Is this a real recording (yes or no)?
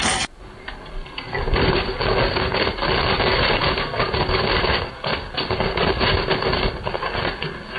yes